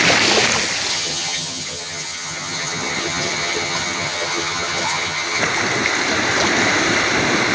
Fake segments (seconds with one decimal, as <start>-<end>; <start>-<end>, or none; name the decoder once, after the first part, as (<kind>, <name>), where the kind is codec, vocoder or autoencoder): 0.9-5.4 (vocoder, HiFi-GAN)

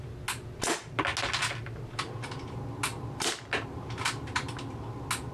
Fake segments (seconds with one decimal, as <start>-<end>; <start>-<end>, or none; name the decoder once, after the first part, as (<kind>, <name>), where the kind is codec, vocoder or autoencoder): none

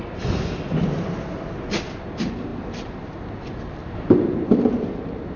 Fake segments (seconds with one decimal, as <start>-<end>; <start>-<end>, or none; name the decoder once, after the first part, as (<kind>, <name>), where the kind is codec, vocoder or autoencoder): 2.5-3.2 (vocoder, BigVGAN v2); 3.8-5.4

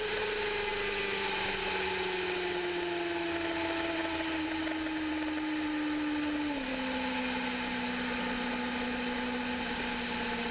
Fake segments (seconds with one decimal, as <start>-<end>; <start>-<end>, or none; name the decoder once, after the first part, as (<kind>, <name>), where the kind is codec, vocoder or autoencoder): none